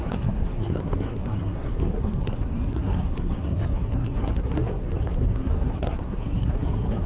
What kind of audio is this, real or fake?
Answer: fake